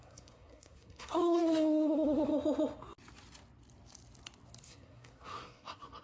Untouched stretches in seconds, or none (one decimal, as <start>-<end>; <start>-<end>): 2.3-4.6